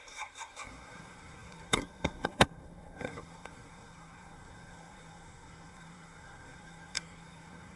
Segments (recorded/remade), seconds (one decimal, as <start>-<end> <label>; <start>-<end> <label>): 0.0-7.8 remade